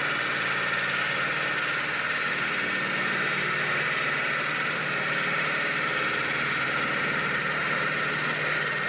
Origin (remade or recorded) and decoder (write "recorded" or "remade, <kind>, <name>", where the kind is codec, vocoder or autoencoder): recorded